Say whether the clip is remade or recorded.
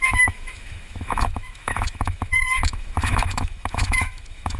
remade